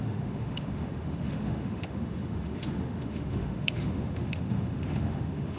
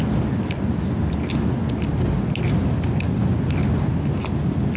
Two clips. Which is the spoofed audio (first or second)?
first